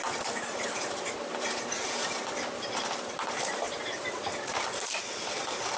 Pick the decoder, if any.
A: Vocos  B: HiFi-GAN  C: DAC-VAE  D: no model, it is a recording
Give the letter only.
D